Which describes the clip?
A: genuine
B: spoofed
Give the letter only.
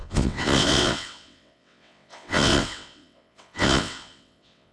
B